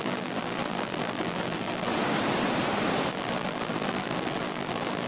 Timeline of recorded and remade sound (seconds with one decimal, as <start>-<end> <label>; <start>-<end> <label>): 0.0-1.9 remade; 1.9-3.1 recorded; 3.1-5.1 remade